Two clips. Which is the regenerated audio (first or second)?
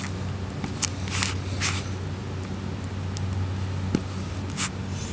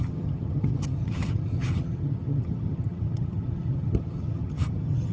second